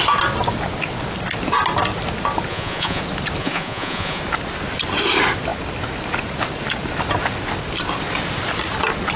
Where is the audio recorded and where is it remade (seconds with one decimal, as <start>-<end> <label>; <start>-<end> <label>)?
0.0-2.5 recorded; 2.5-3.0 remade; 3.0-3.4 recorded; 3.4-4.2 remade; 4.2-9.2 recorded